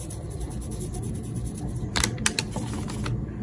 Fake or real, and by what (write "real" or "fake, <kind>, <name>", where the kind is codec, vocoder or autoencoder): real